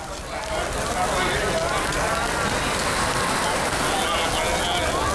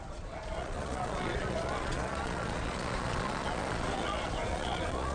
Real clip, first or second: first